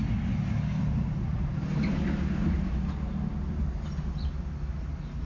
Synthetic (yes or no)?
no